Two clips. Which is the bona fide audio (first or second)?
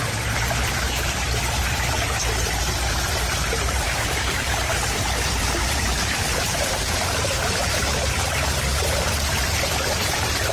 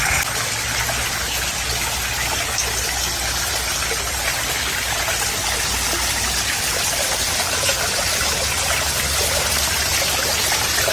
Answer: second